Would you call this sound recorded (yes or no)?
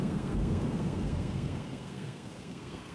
no